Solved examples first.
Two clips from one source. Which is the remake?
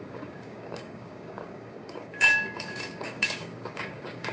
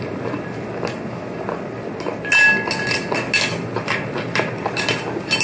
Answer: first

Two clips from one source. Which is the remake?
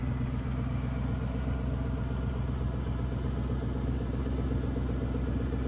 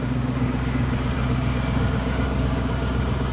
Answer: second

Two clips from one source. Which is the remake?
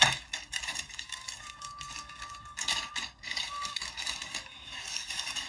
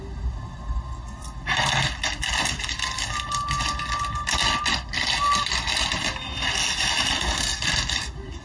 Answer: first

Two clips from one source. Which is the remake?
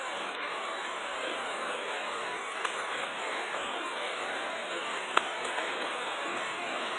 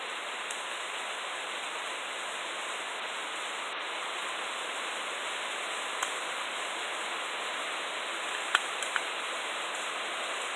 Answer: first